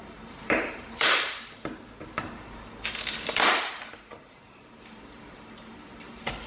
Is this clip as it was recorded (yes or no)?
no